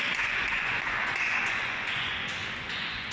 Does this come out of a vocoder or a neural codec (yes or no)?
yes